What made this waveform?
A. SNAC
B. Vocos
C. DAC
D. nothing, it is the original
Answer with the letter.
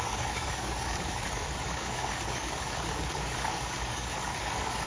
C